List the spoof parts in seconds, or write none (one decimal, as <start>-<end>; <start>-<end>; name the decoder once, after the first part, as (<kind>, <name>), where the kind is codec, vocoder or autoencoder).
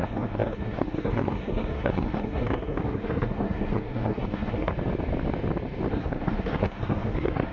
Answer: 0.0-4.7 (codec, SNAC); 5.9-7.5